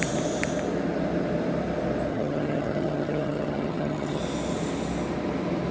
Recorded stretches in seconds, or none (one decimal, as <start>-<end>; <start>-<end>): 0.0-2.1; 4.2-5.7